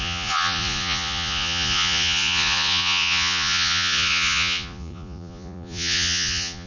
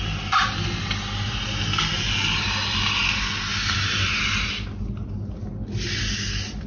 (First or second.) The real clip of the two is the second